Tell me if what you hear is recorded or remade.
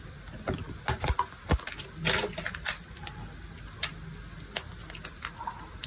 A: recorded